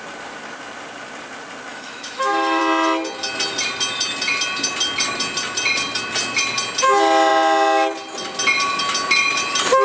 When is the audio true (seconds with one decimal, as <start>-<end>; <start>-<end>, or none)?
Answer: 0.0-1.7; 2.6-9.8